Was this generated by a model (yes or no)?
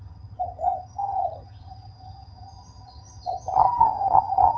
yes